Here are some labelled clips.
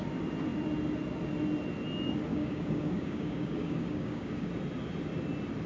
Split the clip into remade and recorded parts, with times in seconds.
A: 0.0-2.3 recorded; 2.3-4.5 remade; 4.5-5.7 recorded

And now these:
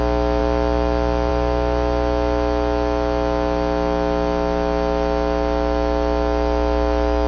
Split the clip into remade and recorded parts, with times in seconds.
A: 0.0-7.3 recorded

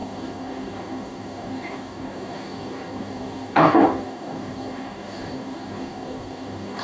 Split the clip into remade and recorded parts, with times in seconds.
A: 0.0-6.8 remade

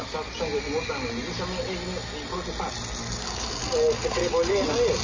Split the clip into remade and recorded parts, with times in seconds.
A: 0.0-3.0 recorded; 3.0-3.5 remade; 3.5-5.0 recorded

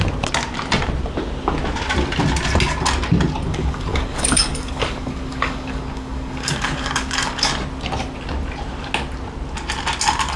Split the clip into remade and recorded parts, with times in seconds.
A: 0.0-3.5 recorded; 3.5-7.5 remade; 7.5-10.4 recorded

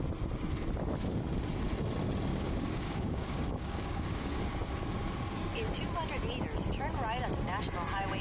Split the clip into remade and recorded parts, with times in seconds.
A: 0.0-2.3 recorded; 2.3-4.4 remade; 4.4-8.2 recorded